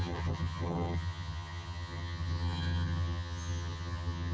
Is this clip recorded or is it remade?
remade